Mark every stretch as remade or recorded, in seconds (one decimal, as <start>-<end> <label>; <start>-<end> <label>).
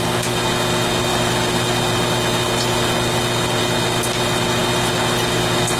0.0-5.8 recorded